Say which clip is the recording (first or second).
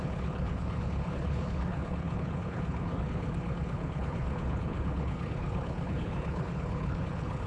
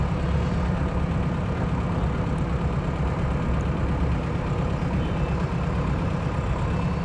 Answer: second